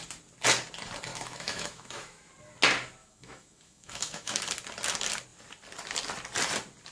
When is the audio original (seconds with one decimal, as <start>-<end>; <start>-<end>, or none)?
0.0-1.1; 2.3-3.0; 4.4-6.9